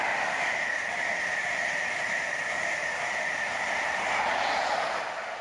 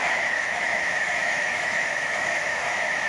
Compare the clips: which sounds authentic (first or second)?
first